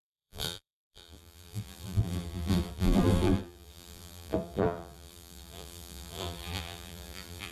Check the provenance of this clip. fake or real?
fake